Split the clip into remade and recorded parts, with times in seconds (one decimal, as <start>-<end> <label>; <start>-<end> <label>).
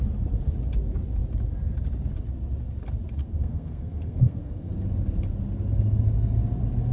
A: 0.0-3.2 recorded; 3.2-4.7 remade; 4.7-6.9 recorded